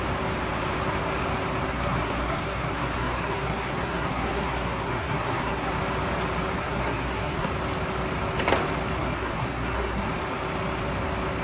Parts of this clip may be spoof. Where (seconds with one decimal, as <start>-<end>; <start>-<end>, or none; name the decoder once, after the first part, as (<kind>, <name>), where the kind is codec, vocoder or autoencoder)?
1.7-5.7 (codec, SNAC); 6.6-7.5; 9.0-10.1